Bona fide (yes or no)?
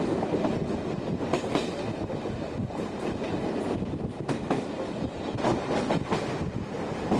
no